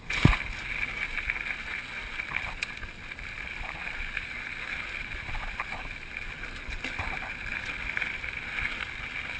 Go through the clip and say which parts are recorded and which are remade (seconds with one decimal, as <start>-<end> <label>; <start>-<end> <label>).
0.0-9.4 recorded